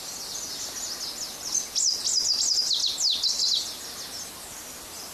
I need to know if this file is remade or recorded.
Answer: recorded